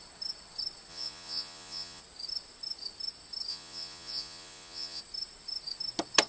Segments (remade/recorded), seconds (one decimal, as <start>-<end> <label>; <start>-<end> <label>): 0.0-0.9 recorded; 0.9-2.0 remade; 2.0-3.5 recorded; 3.5-5.0 remade; 5.0-6.3 recorded